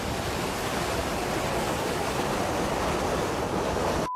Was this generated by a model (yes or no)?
no